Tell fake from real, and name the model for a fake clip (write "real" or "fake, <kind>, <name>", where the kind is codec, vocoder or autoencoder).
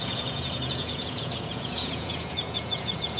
fake, vocoder, Vocos